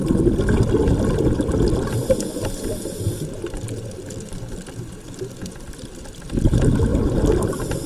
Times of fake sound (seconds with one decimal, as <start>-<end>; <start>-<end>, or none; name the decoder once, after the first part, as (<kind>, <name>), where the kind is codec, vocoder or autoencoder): none